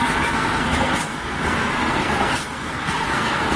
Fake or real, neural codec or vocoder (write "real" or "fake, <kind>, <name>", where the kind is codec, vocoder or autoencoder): fake, codec, SNAC